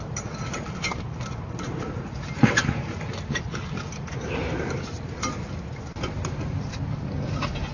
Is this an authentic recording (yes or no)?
yes